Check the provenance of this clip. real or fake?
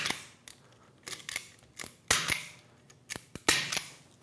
real